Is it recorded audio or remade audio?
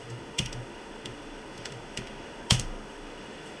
remade